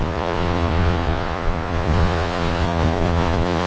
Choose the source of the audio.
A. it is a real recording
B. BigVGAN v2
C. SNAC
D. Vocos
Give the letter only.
D